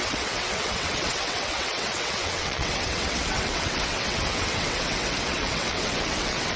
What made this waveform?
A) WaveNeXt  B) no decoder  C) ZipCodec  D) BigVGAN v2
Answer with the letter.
A